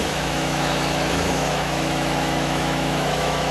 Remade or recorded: remade